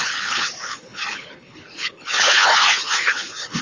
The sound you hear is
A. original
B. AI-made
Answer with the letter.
B